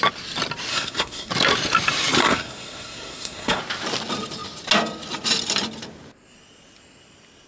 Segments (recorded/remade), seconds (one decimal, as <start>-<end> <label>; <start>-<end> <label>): 0.0-0.7 recorded; 0.7-1.3 remade; 1.3-2.2 recorded; 2.2-3.6 remade; 3.6-7.5 recorded